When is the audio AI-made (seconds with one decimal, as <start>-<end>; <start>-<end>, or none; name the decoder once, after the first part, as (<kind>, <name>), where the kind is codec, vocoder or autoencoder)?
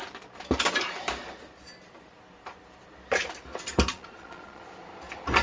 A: 3.9-4.6 (vocoder, Vocos)